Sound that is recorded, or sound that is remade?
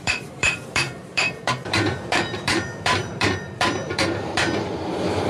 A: remade